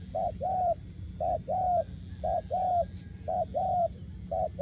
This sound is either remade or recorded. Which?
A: recorded